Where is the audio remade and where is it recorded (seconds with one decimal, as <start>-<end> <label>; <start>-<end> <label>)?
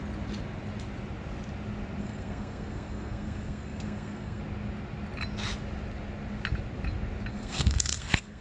0.0-2.0 recorded; 2.0-4.4 remade; 4.4-7.3 recorded; 7.3-8.4 remade